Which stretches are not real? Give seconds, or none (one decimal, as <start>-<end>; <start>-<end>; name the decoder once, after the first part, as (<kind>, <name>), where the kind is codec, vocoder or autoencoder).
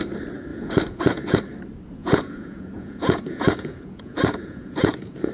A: 0.5-1.4 (vocoder, Vocos); 2.0-5.3